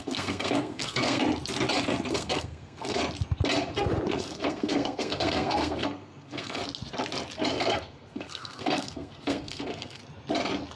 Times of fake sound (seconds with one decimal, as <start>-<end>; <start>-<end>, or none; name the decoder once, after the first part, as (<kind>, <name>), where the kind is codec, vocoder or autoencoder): 0.0-1.2 (codec, SNAC); 2.1-3.0; 4.1-6.6; 7.5-10.0

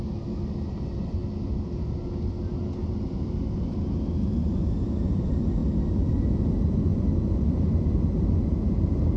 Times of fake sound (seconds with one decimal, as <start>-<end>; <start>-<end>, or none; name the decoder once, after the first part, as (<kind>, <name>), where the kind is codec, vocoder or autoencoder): none